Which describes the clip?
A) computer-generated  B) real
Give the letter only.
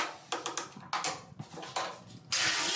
B